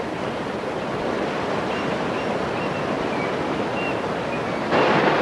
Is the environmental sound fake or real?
real